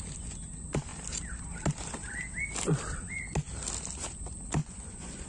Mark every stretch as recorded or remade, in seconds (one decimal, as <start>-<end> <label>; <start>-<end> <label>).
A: 0.0-4.6 recorded; 4.6-5.3 remade